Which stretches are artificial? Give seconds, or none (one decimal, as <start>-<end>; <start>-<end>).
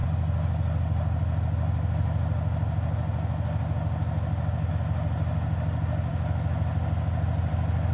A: none